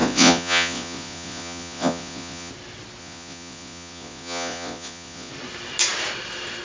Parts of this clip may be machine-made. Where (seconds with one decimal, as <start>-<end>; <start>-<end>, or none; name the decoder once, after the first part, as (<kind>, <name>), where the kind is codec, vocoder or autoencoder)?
0.0-2.5 (vocoder, Vocos); 3.0-5.3